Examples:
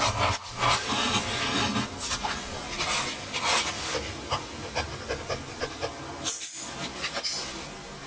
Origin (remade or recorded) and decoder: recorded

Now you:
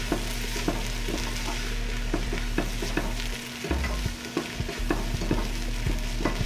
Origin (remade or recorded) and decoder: recorded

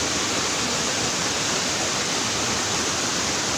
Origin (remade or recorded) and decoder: recorded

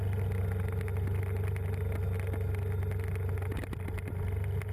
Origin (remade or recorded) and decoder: recorded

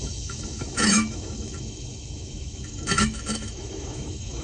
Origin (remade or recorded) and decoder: remade, autoencoder, DAC-VAE